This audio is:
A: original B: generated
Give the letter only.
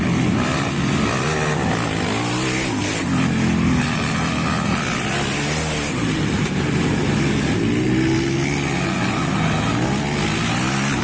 A